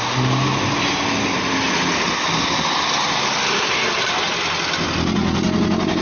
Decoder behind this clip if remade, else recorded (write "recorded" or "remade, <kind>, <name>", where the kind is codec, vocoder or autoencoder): recorded